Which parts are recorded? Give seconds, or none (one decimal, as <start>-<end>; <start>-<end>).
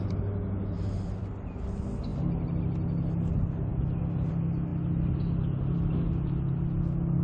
0.0-7.2